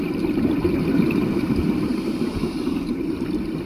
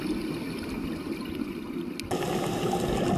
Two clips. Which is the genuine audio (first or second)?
second